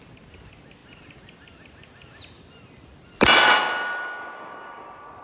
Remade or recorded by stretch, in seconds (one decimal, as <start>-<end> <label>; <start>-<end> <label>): 0.0-5.2 recorded